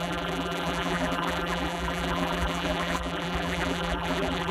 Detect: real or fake fake